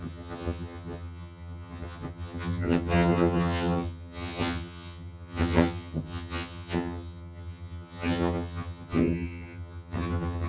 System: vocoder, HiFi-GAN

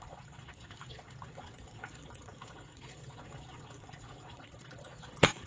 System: vocoder, Vocos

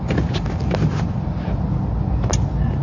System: none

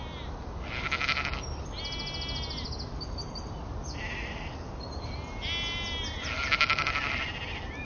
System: none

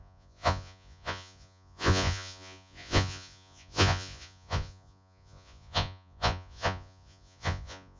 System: vocoder, Vocos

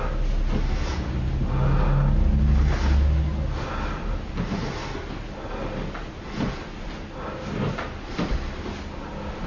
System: none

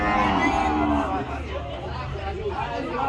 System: none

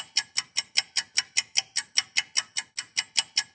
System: none